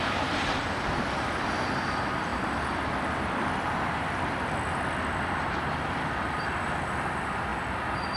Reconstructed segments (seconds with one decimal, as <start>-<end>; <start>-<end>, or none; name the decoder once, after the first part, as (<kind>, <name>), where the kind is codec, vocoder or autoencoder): 7.5-8.2 (vocoder, BigVGAN v2)